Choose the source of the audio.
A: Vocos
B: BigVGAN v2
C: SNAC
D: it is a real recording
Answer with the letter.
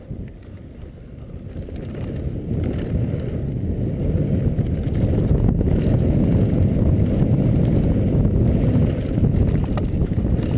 D